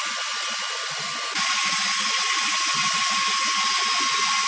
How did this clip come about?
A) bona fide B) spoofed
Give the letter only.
A